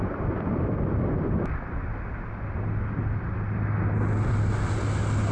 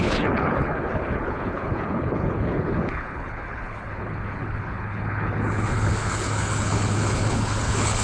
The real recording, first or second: first